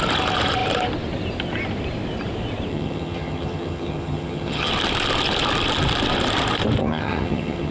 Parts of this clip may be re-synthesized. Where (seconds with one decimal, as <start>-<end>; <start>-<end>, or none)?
2.7-4.7; 6.8-7.7